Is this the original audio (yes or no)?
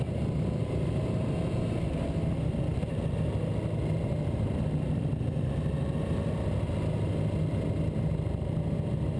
yes